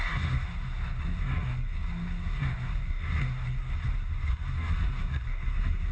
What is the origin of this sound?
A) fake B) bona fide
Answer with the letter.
A